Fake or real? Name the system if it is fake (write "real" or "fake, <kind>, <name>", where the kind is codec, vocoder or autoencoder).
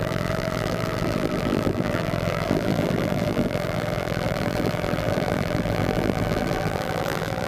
fake, vocoder, BigVGAN v2